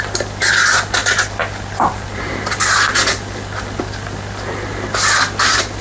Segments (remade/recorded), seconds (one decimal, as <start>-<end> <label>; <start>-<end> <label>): 0.0-5.8 recorded